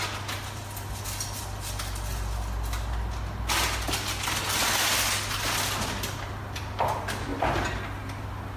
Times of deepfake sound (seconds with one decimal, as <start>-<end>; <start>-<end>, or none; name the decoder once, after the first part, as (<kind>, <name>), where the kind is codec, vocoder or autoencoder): none